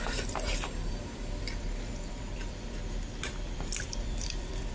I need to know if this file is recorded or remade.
remade